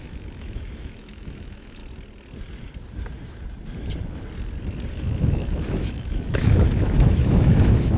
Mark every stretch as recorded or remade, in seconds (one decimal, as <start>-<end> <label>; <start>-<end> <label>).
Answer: 0.0-1.8 remade; 1.8-4.9 recorded; 4.9-8.0 remade